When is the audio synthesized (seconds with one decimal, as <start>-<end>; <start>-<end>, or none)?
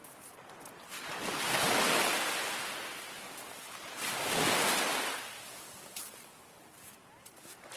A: none